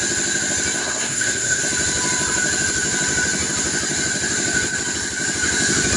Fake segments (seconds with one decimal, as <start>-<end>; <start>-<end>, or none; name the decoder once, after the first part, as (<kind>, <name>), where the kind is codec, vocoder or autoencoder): 0.8-1.6 (codec, SNAC)